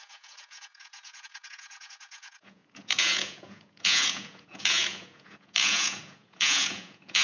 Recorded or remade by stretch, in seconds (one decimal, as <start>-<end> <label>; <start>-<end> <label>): 0.0-7.2 remade